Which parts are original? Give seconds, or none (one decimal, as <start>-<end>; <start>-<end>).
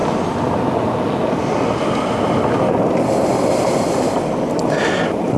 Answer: 0.0-5.4